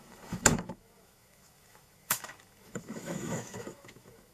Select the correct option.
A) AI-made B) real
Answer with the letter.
A